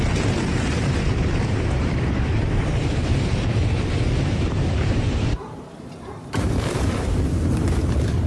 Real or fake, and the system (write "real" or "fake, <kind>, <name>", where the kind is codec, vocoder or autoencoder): fake, vocoder, BigVGAN v2